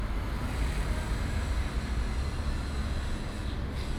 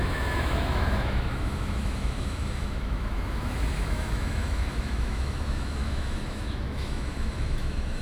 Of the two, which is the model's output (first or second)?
second